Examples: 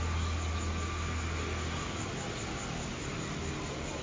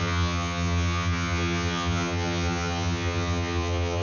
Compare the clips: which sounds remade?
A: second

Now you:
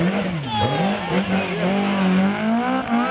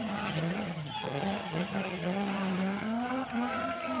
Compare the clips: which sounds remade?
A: second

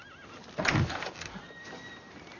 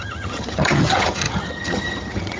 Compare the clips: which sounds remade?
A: second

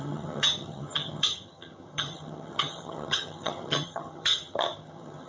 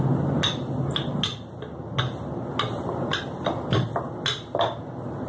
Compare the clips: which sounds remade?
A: first